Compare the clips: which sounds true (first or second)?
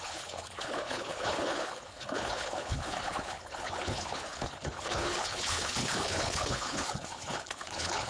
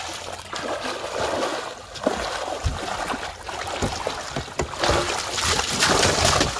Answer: second